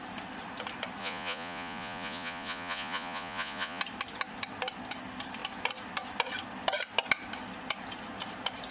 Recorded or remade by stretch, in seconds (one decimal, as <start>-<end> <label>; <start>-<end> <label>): 0.0-1.0 recorded; 1.0-3.8 remade; 3.8-8.7 recorded